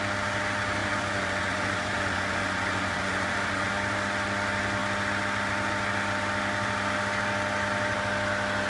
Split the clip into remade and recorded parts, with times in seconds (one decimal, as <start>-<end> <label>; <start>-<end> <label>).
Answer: 0.0-0.8 recorded; 0.8-3.7 remade; 3.7-8.7 recorded